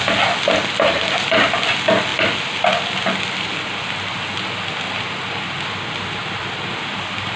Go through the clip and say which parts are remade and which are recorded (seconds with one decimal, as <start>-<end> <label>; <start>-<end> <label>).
0.0-7.4 recorded